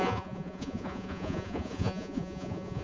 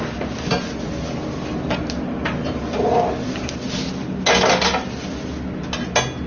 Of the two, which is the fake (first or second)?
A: first